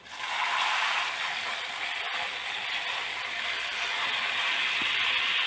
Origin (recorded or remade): recorded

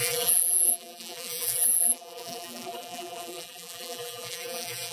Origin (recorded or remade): remade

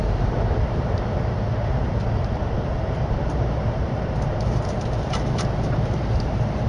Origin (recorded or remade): remade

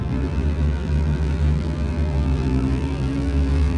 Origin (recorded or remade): remade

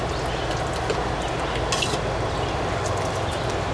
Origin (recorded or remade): recorded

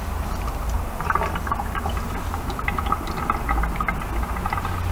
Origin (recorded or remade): recorded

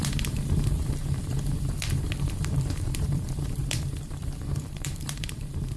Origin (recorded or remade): remade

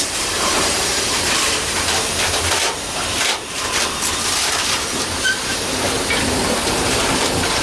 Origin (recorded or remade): remade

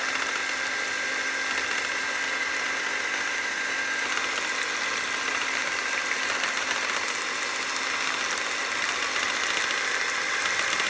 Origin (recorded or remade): recorded